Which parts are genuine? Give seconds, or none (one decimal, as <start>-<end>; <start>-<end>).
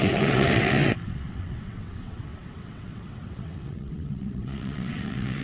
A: none